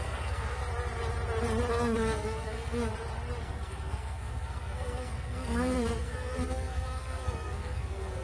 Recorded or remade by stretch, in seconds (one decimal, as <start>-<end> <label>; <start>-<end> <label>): 0.0-0.6 remade; 0.6-1.7 recorded; 1.7-2.9 remade; 2.9-3.4 recorded; 3.4-8.2 remade